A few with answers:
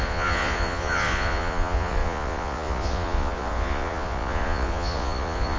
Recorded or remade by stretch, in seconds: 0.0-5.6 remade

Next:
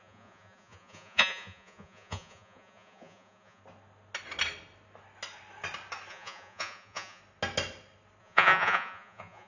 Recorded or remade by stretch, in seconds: 0.0-3.6 remade; 3.6-6.1 recorded; 6.1-7.2 remade; 7.2-8.2 recorded; 8.2-9.5 remade